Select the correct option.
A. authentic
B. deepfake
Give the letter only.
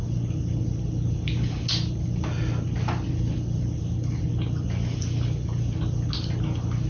A